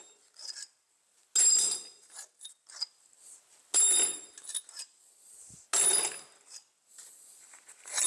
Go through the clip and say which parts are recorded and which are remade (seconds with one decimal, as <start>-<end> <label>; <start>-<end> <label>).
0.0-8.1 recorded